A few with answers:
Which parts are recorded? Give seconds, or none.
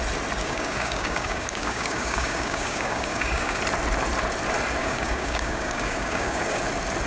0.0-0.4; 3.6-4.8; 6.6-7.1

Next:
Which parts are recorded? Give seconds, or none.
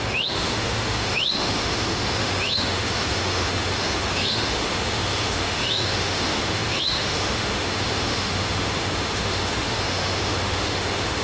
none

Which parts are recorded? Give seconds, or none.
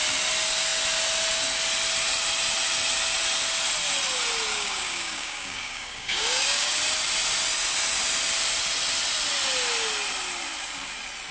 0.0-4.5; 6.8-11.3